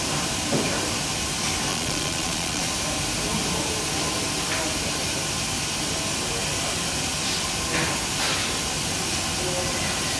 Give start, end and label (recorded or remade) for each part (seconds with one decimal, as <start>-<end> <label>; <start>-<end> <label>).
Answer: 0.0-1.7 recorded; 1.7-2.7 remade; 2.7-10.2 recorded